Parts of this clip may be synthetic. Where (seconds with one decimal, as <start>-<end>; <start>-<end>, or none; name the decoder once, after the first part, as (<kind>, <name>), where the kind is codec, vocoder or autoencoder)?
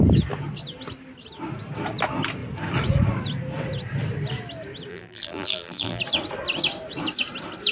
4.9-6.0 (vocoder, BigVGAN v2)